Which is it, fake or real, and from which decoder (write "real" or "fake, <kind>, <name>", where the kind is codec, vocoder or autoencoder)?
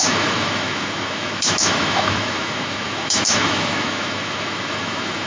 fake, autoencoder, DAC-VAE